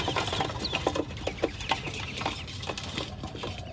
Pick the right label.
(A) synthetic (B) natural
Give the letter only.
B